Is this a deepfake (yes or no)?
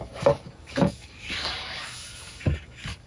yes